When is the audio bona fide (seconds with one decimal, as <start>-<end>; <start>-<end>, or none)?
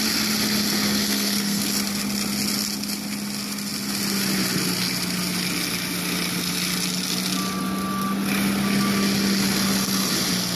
0.0-1.1; 1.6-10.6